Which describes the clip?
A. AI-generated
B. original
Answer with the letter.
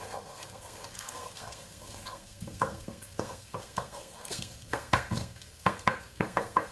A